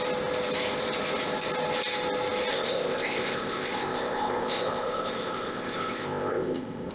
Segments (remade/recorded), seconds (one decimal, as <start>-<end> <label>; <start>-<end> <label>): 0.0-2.5 recorded; 2.5-6.9 remade